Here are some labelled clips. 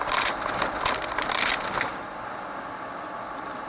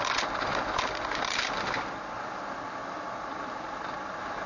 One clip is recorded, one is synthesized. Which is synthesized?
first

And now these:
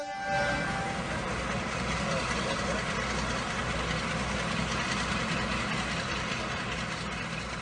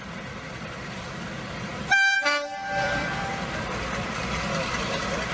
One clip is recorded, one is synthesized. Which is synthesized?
second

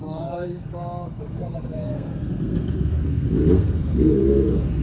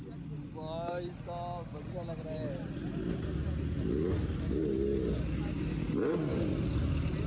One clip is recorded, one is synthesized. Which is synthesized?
first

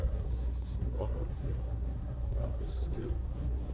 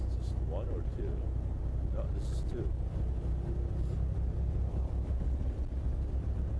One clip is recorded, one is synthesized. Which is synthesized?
first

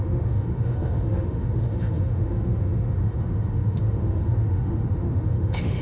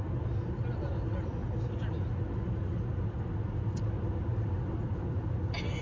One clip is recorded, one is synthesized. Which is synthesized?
first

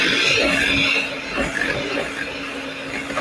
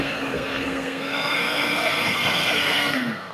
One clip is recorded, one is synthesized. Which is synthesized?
second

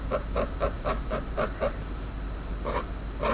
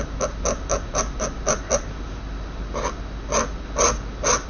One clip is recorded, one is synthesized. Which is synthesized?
first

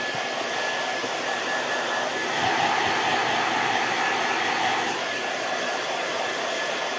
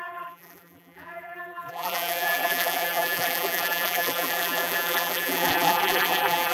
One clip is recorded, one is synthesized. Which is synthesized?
second